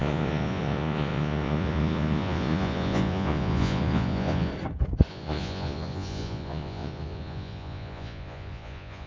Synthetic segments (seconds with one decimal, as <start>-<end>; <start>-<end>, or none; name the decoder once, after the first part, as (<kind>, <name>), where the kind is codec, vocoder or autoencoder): 0.0-4.5 (vocoder, Vocos); 5.1-9.1